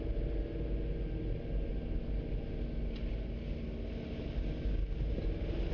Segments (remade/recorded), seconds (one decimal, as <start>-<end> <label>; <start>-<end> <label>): 0.0-5.7 recorded